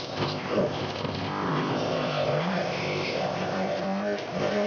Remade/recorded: remade